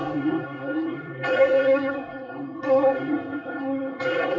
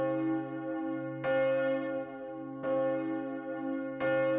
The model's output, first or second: first